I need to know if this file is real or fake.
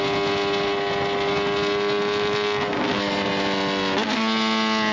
real